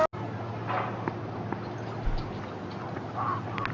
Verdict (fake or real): real